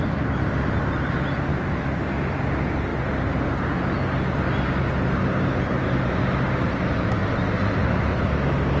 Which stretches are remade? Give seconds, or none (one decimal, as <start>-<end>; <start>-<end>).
1.5-2.4

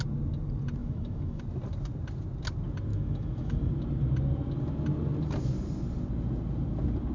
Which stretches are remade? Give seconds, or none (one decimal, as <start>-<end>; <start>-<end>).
0.8-1.4; 2.9-3.7

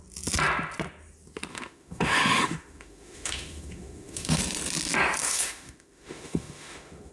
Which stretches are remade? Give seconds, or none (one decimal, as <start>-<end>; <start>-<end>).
1.5-4.4; 5.2-7.1